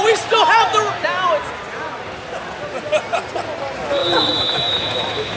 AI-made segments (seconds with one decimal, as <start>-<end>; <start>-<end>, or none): 4.0-5.4